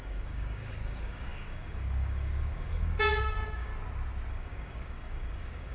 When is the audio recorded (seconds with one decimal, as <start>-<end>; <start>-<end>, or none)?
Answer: 3.7-4.3